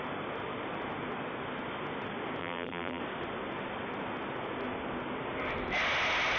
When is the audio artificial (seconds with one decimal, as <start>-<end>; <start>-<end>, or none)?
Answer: 2.4-3.0